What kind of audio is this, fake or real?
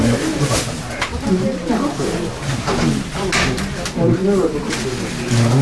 real